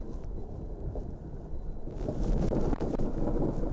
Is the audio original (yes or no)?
yes